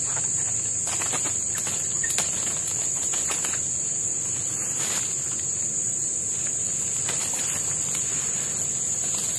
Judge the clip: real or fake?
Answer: real